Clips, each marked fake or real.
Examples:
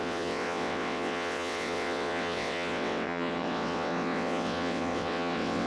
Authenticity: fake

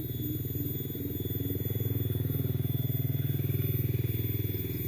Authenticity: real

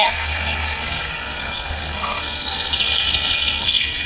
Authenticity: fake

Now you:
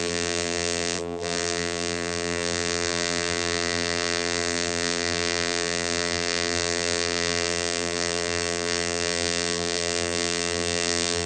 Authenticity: fake